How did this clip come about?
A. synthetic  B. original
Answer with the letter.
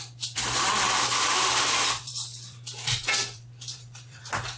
A